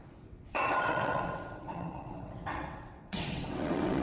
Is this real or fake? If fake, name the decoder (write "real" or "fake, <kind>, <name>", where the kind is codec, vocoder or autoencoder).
fake, vocoder, WaveNeXt